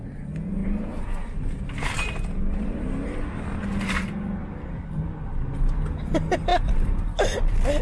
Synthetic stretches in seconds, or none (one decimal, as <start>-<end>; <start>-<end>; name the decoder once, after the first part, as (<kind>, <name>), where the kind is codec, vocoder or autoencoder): 6.5-7.1 (vocoder, BigVGAN v2)